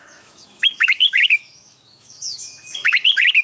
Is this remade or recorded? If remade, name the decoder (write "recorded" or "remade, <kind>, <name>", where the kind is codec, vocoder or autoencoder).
remade, autoencoder, DAC-VAE